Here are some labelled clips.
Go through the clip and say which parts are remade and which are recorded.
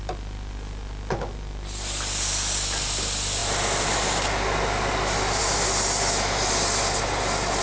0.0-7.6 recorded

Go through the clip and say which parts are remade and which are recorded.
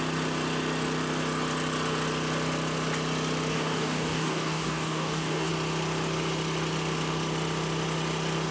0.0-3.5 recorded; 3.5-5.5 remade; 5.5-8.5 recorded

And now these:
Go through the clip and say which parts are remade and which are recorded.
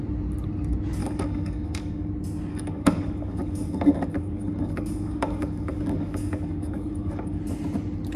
0.0-1.0 recorded; 1.0-2.1 remade; 2.1-2.5 recorded; 2.5-7.4 remade; 7.4-8.2 recorded